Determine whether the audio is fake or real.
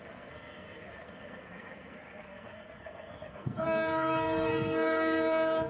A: fake